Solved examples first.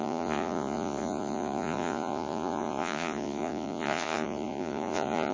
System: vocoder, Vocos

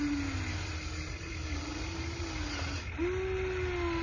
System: none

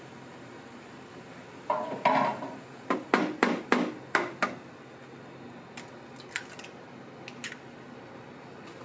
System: none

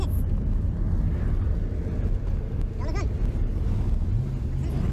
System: none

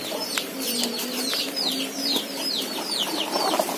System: vocoder, BigVGAN v2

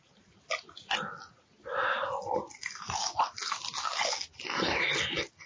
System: none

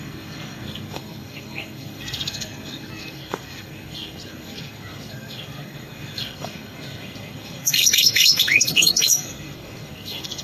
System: codec, SNAC